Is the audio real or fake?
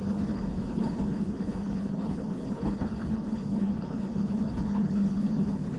fake